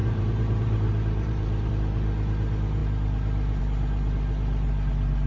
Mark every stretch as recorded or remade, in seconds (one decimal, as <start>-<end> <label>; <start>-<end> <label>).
0.0-1.7 remade; 1.7-5.3 recorded